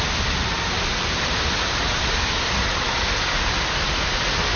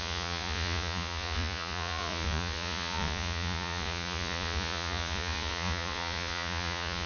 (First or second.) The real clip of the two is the first